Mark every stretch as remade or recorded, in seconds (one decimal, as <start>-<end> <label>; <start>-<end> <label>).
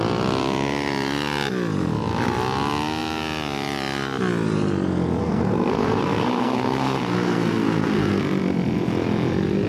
0.0-5.2 recorded; 5.2-8.2 remade; 8.2-9.7 recorded